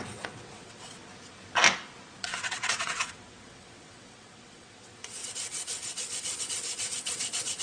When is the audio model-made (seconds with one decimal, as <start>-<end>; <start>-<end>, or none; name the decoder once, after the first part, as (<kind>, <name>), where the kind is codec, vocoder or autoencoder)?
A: 0.0-1.1 (vocoder, WaveNeXt); 2.2-7.6